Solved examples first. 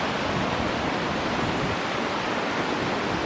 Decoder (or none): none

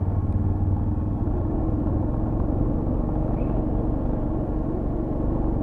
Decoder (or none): none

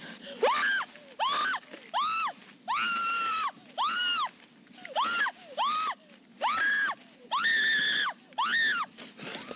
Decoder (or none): none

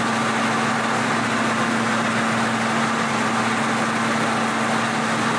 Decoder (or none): none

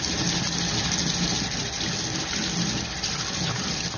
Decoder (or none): none